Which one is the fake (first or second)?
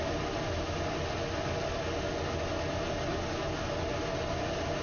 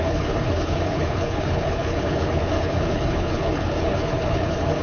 second